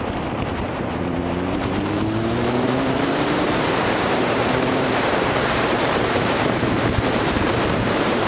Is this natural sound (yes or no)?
no